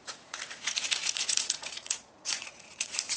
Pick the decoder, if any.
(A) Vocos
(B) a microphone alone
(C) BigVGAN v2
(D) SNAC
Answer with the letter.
A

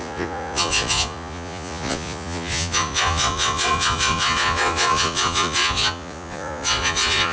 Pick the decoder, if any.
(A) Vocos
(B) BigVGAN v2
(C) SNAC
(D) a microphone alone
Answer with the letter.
A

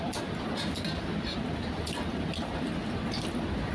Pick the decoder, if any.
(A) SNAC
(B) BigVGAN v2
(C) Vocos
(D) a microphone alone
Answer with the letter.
D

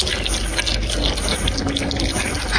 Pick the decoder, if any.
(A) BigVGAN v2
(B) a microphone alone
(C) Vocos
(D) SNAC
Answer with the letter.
B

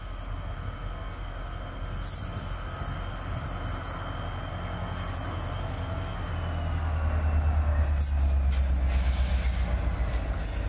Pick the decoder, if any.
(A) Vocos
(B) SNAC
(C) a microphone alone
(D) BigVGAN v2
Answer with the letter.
C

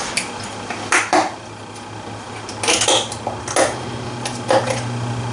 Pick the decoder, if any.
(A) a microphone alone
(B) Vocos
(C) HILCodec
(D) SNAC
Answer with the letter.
A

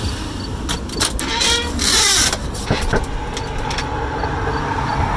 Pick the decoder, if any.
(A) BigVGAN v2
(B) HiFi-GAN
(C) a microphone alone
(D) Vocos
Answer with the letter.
C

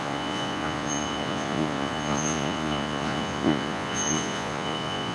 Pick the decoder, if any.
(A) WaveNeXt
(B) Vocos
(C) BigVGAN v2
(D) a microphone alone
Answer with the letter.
B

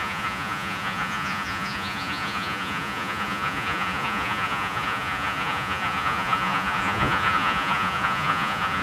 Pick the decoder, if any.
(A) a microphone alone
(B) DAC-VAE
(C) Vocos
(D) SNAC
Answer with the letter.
C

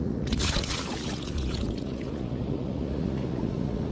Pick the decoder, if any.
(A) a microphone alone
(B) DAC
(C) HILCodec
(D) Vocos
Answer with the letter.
D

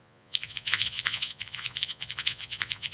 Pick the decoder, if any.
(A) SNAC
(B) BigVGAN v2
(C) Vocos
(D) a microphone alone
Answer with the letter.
C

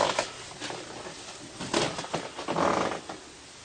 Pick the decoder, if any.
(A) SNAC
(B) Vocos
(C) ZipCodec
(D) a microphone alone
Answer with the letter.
D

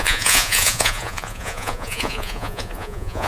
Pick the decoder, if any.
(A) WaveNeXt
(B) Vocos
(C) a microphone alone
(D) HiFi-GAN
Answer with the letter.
B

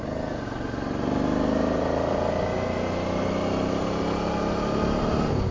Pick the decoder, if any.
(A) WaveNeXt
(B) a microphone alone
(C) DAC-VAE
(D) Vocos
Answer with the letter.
B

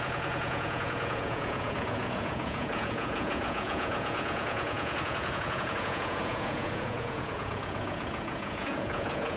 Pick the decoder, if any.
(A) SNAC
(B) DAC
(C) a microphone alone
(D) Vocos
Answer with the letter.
D